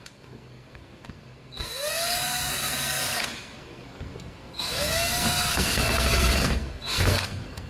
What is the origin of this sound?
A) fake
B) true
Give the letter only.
A